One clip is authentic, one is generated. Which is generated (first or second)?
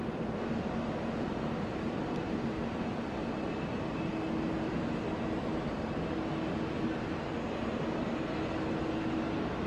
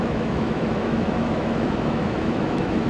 second